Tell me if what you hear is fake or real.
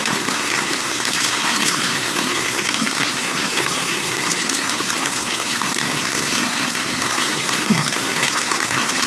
fake